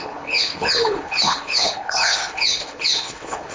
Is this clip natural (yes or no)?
no